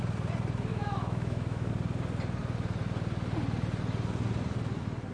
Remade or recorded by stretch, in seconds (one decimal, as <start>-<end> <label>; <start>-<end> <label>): 0.0-0.7 recorded; 0.7-1.7 remade; 1.7-5.1 recorded